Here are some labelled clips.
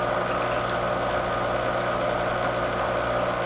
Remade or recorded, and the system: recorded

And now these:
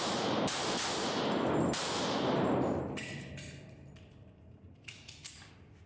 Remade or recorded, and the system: recorded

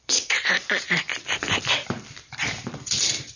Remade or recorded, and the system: remade, vocoder, BigVGAN v2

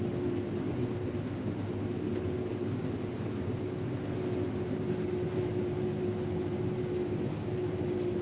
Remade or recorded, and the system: recorded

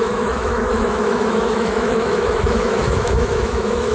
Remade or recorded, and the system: remade, autoencoder, DAC-VAE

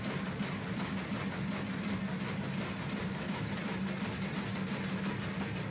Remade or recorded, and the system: recorded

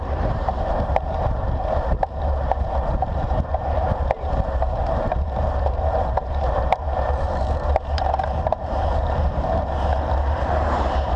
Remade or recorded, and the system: remade, vocoder, BigVGAN v2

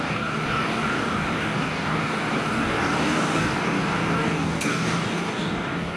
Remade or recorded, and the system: remade, codec, DAC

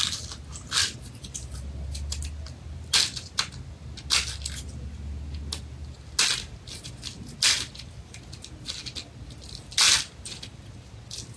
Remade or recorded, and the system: recorded